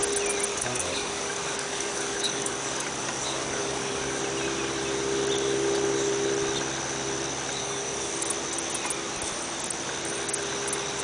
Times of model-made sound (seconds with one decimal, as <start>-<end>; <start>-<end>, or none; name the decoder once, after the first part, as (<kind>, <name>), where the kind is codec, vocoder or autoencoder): 0.5-4.2 (codec, DAC); 7.6-8.1